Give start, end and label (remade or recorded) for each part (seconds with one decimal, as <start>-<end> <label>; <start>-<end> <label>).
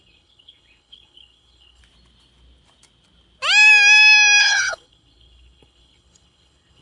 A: 0.0-1.8 remade; 1.8-4.4 recorded; 4.4-6.8 remade